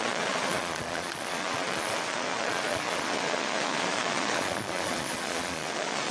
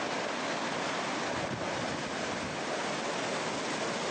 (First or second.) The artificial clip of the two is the first